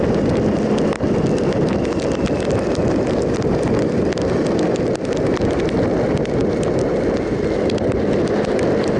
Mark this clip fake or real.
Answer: real